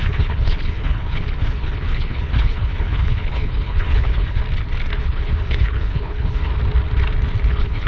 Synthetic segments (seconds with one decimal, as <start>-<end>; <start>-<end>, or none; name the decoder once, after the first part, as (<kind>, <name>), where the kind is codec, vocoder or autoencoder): 0.0-4.4 (codec, HILCodec); 5.0-6.5; 7.5-7.9